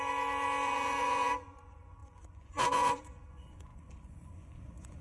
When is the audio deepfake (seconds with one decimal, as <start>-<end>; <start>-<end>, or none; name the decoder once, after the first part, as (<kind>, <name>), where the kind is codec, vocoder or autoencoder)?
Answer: 0.0-5.0 (vocoder, Vocos)